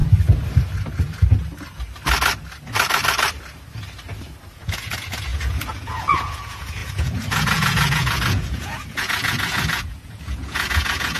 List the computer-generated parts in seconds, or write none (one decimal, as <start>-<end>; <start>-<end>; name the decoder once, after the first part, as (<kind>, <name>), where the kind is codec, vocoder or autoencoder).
4.5-11.2 (vocoder, Vocos)